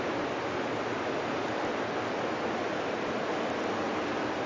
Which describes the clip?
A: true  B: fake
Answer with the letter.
A